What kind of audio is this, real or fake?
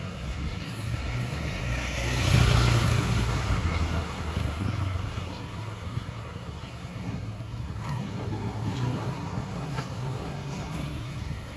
fake